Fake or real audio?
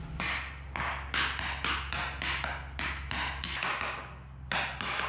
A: real